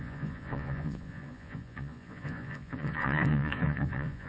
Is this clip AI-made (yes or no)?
yes